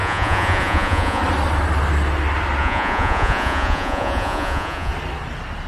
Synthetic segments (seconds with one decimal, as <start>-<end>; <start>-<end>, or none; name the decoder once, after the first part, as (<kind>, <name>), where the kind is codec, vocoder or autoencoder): 0.0-1.2 (vocoder, Vocos); 2.6-4.9